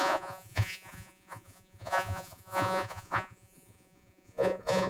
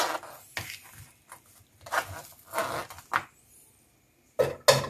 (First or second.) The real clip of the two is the second